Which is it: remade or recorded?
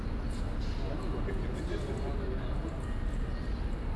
recorded